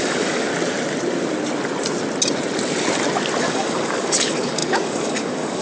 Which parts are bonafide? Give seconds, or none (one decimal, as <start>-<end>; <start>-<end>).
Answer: 0.5-3.4